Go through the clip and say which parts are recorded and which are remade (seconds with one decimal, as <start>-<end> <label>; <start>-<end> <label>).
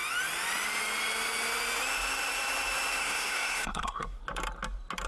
0.0-3.0 recorded; 3.0-4.2 remade; 4.2-5.1 recorded